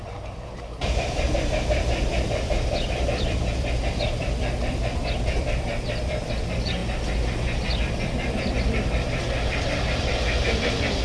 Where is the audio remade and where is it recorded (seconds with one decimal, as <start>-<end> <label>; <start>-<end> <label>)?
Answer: 0.0-6.8 remade; 6.8-7.8 recorded; 7.8-11.0 remade